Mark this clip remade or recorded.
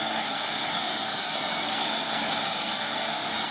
remade